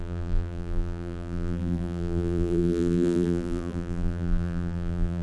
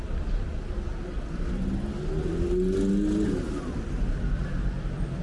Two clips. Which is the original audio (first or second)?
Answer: second